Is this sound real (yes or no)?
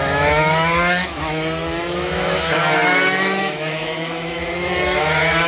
no